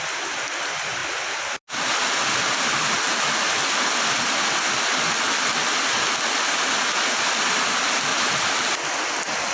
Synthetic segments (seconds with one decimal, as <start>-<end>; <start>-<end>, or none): 8.1-8.6